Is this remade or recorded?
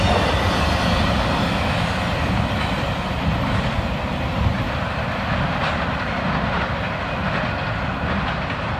recorded